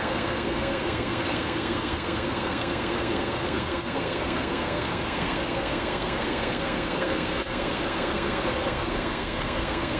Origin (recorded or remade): remade